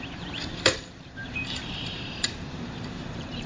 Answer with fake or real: fake